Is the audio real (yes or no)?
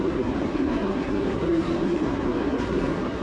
no